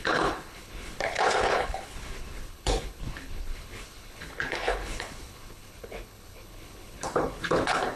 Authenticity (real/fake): fake